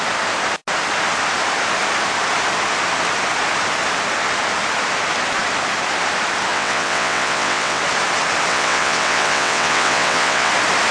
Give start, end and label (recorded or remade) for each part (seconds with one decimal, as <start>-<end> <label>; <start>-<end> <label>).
0.0-6.5 recorded; 6.5-7.8 remade; 7.8-8.5 recorded; 8.5-10.5 remade; 10.5-10.9 recorded